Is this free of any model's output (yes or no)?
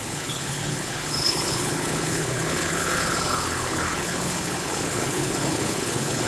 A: no